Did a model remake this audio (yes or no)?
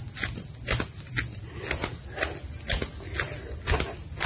no